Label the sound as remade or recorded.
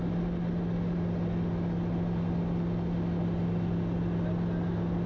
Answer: recorded